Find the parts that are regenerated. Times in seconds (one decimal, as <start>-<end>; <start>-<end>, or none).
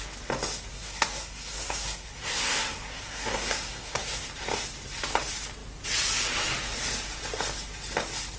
0.7-4.3